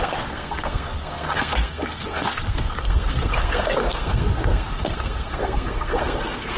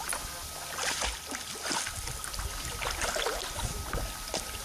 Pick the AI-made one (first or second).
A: first